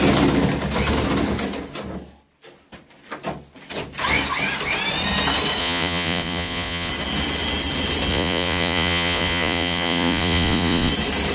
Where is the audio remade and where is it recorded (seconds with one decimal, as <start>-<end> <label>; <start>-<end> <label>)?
0.0-5.6 recorded; 5.6-6.9 remade; 6.9-8.1 recorded; 8.1-10.9 remade; 10.9-11.3 recorded

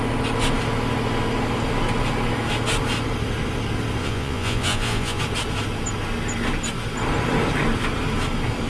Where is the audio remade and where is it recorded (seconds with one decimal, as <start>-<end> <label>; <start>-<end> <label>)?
0.0-4.0 recorded; 4.0-5.2 remade; 5.2-8.7 recorded

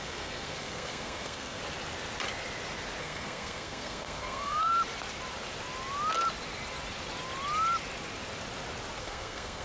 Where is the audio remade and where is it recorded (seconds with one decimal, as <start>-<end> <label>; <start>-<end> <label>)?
0.0-1.6 remade; 1.6-3.0 recorded; 3.0-4.7 remade; 4.7-9.0 recorded; 9.0-9.6 remade